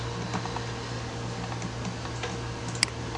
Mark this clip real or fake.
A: real